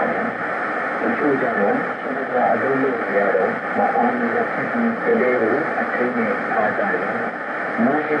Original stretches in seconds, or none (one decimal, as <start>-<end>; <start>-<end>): 0.0-3.1; 4.4-5.1; 6.0-8.2